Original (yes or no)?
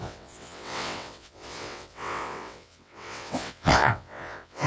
no